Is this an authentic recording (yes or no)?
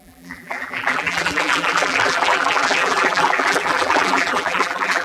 no